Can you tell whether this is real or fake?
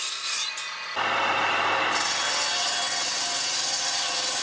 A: real